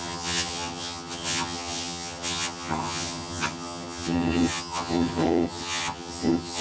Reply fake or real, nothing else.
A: fake